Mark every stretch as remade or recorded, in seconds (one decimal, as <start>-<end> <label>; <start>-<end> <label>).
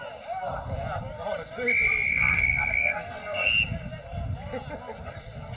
0.0-2.1 recorded; 2.1-3.5 remade; 3.5-5.6 recorded